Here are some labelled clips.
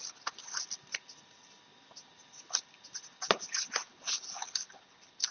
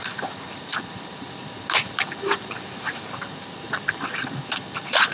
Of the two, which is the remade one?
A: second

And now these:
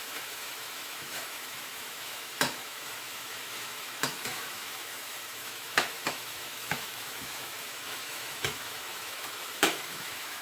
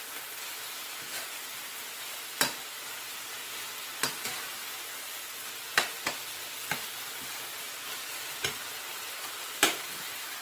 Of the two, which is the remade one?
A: first